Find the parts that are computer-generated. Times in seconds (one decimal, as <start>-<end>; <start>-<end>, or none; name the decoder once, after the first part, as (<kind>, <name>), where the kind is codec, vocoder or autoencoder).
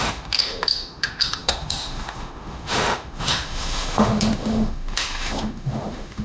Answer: 0.0-6.2 (autoencoder, DAC-VAE)